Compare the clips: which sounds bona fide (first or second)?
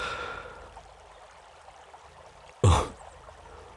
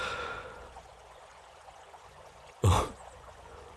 first